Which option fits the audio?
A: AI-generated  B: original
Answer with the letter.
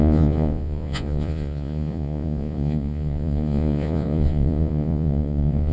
A